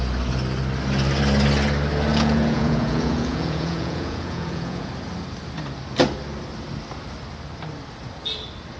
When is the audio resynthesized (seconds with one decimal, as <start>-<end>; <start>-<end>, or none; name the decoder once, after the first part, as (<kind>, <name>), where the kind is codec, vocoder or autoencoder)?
2.1-4.9 (vocoder, Vocos)